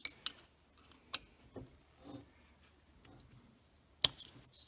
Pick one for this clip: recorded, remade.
recorded